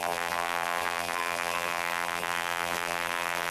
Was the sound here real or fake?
fake